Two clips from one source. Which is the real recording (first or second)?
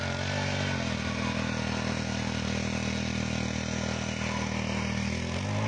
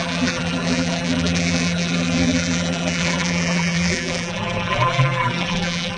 first